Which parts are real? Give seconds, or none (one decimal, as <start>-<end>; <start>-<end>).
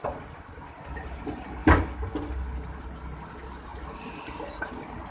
0.0-5.1